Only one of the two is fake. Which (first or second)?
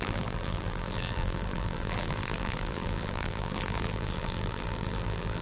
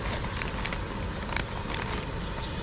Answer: first